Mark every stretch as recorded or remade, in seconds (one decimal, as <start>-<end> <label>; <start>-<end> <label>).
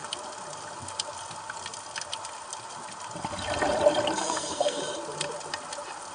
0.0-4.2 recorded; 4.2-4.8 remade; 4.8-6.1 recorded